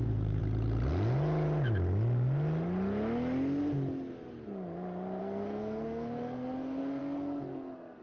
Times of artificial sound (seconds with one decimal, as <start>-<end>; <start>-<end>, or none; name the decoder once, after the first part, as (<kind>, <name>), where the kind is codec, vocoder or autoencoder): 0.0-0.4 (codec, SNAC); 5.2-8.0